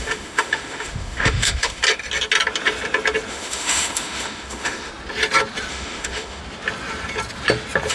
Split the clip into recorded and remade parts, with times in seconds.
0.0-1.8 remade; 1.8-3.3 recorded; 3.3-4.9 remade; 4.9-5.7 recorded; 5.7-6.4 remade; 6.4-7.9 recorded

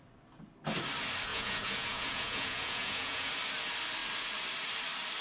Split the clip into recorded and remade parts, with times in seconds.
0.0-1.3 recorded; 1.3-3.3 remade; 3.3-5.2 recorded

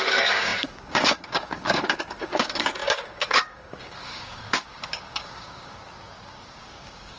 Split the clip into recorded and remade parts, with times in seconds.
0.0-7.2 remade

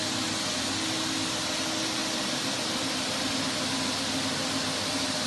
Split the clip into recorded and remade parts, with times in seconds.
0.0-5.3 recorded

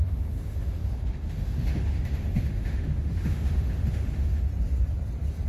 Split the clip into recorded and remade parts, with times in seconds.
0.0-4.5 remade; 4.5-5.5 recorded

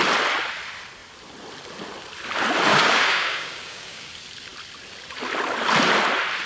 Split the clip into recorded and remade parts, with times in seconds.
0.0-2.7 recorded; 2.7-4.1 remade; 4.1-6.5 recorded

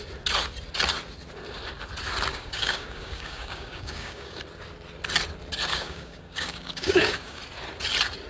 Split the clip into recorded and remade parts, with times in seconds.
0.0-2.3 recorded; 2.3-4.4 remade; 4.4-5.7 recorded; 5.7-7.4 remade; 7.4-8.3 recorded

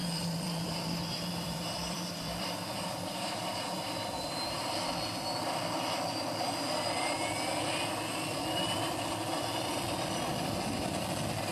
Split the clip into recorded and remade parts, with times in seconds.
0.0-4.6 remade; 4.6-11.5 recorded